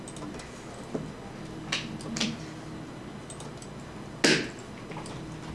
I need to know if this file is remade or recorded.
recorded